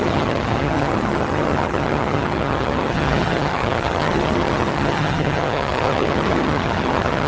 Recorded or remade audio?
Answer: remade